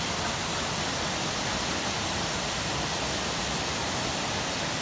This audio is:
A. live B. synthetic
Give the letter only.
A